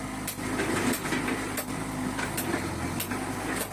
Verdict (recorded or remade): recorded